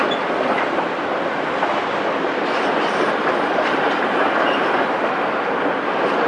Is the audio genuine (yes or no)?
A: no